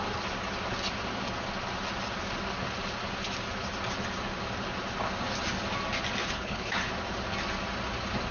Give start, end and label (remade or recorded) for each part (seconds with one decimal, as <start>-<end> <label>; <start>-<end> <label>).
0.0-6.2 recorded; 6.2-6.9 remade; 6.9-8.3 recorded